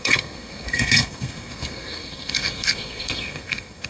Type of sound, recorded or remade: remade